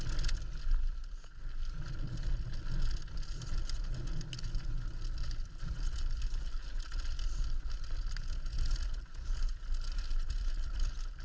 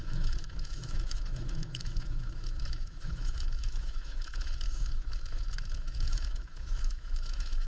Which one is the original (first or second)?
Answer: first